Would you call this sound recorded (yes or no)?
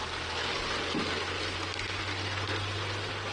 yes